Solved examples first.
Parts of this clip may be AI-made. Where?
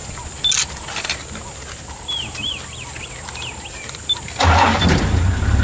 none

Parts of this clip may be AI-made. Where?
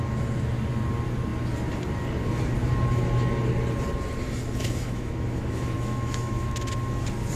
4.6-6.7 (autoencoder, DAC-VAE)